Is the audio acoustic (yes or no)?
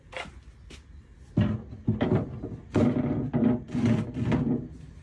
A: yes